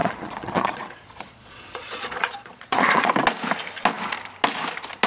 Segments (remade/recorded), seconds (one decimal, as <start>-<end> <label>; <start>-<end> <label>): 0.0-3.1 remade; 3.1-5.1 recorded